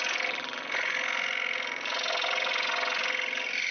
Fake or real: real